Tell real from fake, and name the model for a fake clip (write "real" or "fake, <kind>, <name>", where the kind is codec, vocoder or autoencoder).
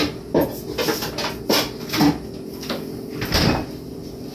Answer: real